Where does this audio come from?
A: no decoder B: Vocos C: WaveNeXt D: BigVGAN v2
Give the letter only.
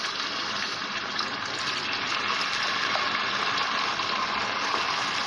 A